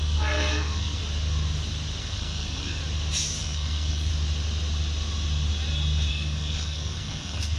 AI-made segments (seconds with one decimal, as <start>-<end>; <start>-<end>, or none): 0.0-1.0; 2.0-2.8; 3.4-4.1; 6.1-7.6